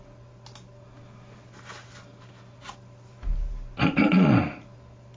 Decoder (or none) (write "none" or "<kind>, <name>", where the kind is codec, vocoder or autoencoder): none